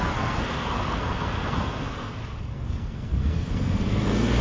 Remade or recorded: remade